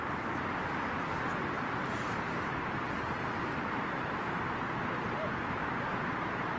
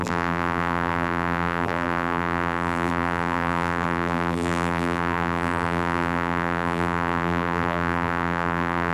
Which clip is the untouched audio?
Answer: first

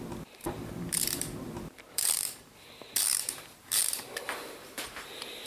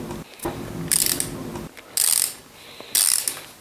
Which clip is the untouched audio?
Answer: second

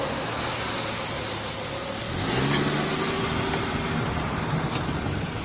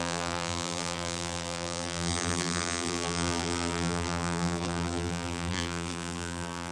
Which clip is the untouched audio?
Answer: first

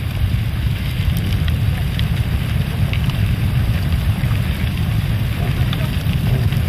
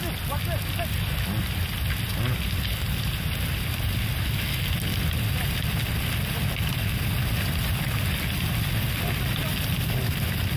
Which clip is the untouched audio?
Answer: second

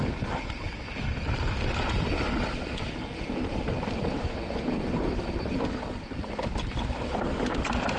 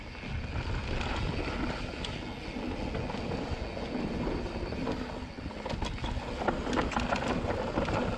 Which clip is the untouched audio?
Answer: second